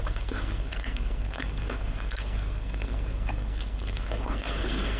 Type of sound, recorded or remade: remade